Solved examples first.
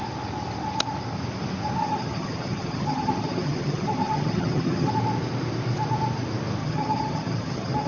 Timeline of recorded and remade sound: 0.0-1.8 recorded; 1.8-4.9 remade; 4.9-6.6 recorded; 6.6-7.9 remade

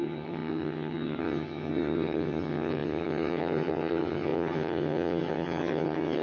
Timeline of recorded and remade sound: 0.0-6.2 remade

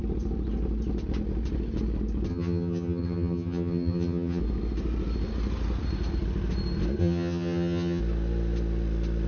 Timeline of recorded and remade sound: 0.0-2.3 recorded; 2.3-4.4 remade; 4.4-7.0 recorded; 7.0-8.0 remade; 8.0-9.3 recorded

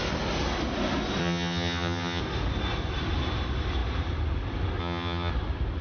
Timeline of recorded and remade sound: 0.0-1.2 recorded; 1.2-2.2 remade; 2.2-4.8 recorded; 4.8-5.3 remade; 5.3-5.8 recorded

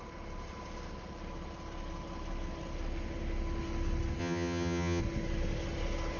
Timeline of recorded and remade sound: 0.0-4.2 recorded; 4.2-5.0 remade; 5.0-6.2 recorded

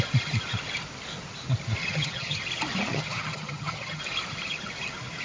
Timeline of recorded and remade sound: 0.0-1.8 recorded; 1.8-2.4 remade; 2.4-2.9 recorded; 2.9-4.0 remade; 4.0-5.2 recorded

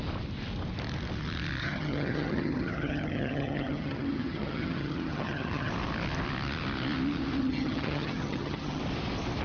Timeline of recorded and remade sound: 0.0-1.6 recorded; 1.6-5.7 remade; 5.7-7.4 recorded; 7.4-8.8 remade; 8.8-9.4 recorded

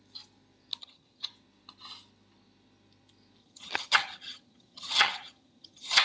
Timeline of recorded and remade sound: 0.0-0.8 recorded; 0.8-1.3 remade; 1.3-3.4 recorded; 3.4-6.0 remade